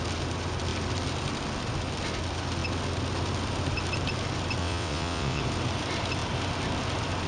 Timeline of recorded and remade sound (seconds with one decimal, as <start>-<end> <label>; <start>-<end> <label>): 0.0-4.6 recorded; 4.6-5.4 remade; 5.4-7.3 recorded